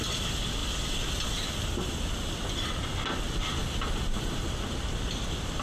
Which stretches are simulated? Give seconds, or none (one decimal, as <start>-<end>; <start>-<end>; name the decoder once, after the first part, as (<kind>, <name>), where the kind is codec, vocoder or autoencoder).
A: none